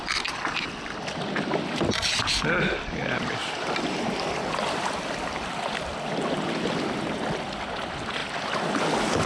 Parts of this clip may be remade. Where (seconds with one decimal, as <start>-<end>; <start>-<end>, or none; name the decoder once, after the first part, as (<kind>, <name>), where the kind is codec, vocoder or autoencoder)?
none